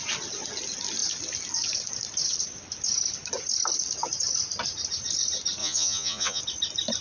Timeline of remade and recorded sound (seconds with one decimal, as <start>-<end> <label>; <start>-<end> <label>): 0.0-5.6 recorded; 5.6-6.4 remade; 6.4-7.0 recorded